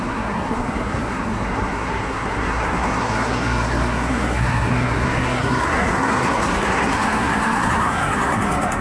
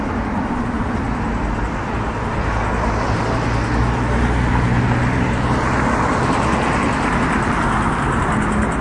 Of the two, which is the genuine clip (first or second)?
second